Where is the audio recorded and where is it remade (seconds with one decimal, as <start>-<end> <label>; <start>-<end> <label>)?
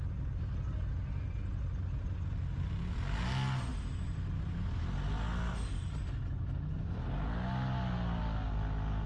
0.0-9.1 recorded